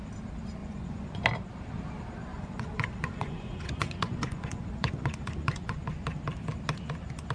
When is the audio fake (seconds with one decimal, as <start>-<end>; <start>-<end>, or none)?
0.6-1.2; 2.3-5.8